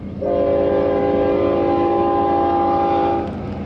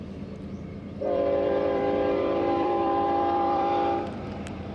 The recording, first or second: first